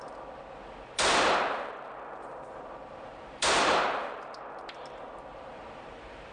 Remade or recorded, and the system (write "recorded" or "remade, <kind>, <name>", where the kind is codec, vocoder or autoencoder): remade, vocoder, BigVGAN v2